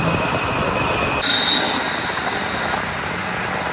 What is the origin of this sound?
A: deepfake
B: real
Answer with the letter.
B